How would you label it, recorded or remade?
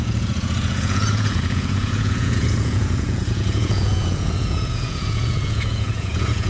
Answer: remade